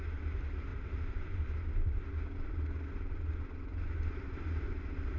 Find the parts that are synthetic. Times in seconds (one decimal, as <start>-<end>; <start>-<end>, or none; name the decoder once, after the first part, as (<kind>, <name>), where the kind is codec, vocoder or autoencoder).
0.7-2.0 (vocoder, BigVGAN v2)